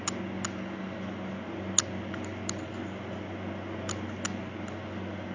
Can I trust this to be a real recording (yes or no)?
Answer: yes